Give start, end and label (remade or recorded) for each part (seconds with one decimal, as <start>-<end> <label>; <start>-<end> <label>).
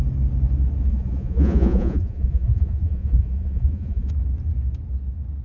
0.0-0.9 recorded; 0.9-4.1 remade; 4.1-5.4 recorded